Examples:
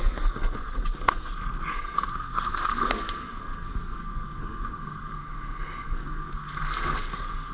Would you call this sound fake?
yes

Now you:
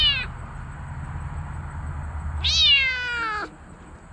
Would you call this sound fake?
no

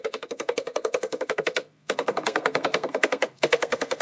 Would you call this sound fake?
yes